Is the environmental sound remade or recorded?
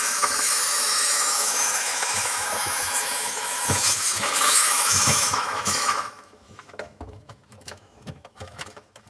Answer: remade